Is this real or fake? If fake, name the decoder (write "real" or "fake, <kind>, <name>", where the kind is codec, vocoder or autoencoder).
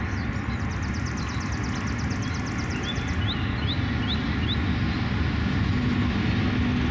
real